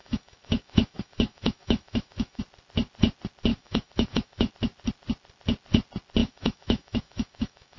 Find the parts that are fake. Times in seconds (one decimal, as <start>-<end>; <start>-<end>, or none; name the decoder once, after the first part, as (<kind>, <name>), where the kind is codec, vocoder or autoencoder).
0.0-2.4 (autoencoder, DAC-VAE); 3.5-4.5; 6.2-7.8